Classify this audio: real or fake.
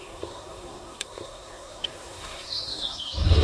fake